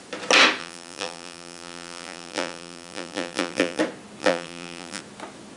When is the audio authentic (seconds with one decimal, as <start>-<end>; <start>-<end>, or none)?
0.0-0.6; 3.8-4.2; 5.0-5.6